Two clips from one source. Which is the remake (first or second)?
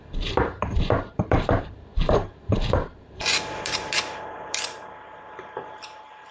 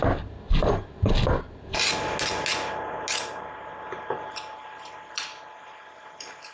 first